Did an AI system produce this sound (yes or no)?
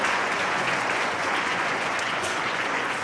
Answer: yes